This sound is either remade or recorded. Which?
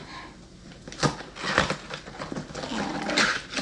recorded